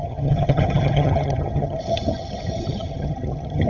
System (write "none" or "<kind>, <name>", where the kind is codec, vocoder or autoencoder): vocoder, HiFi-GAN